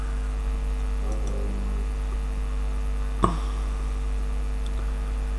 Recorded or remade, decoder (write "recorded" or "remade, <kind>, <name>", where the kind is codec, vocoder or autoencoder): recorded